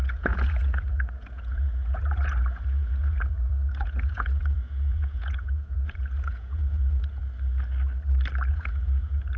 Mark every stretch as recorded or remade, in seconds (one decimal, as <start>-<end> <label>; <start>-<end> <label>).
0.0-7.2 remade; 7.2-8.5 recorded; 8.5-9.4 remade